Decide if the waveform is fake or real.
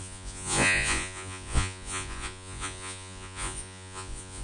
fake